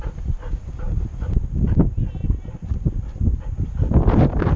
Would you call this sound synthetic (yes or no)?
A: no